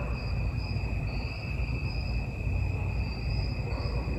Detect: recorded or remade recorded